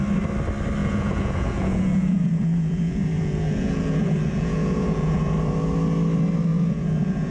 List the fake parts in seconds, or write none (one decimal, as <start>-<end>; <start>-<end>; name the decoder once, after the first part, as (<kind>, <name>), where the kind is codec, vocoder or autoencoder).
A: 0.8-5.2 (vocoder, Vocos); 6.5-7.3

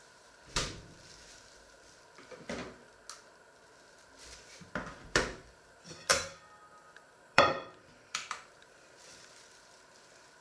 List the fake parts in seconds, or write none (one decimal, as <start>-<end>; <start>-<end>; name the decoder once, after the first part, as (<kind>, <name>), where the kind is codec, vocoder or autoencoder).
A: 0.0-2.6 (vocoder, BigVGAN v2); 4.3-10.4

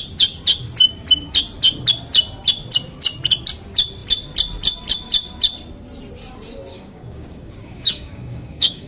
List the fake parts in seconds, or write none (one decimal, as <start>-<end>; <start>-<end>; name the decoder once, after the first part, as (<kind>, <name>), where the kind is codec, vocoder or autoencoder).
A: 6.7-8.9 (codec, DAC)